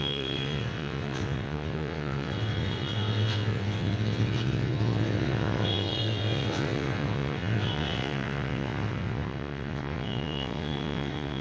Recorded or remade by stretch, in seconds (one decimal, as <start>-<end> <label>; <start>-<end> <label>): 0.0-11.4 remade